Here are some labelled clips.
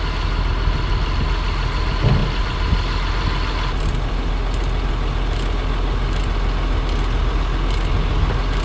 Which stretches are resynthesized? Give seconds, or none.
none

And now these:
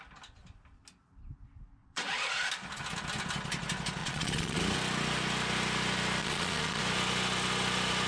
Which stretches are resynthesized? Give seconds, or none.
1.8-2.5 (vocoder, Vocos); 4.0-4.6; 6.2-6.8

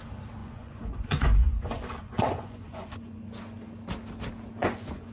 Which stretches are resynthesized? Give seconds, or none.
0.4-3.2 (vocoder, Vocos); 4.6-5.1

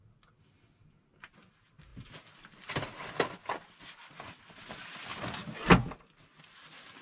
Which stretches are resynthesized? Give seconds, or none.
none

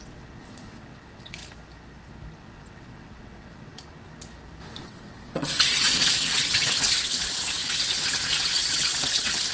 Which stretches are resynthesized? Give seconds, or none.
0.0-1.4 (vocoder, WaveNeXt); 2.4-3.7; 4.8-9.5